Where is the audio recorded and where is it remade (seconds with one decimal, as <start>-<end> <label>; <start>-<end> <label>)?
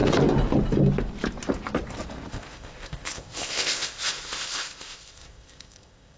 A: 0.0-2.3 recorded; 2.3-6.2 remade